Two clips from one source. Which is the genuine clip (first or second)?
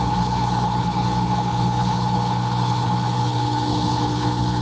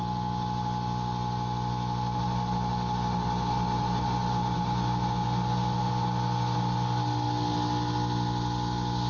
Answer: second